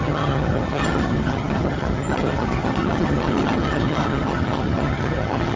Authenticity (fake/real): fake